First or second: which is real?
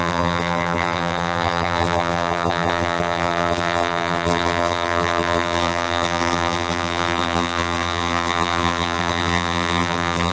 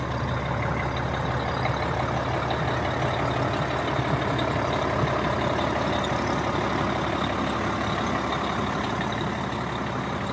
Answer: second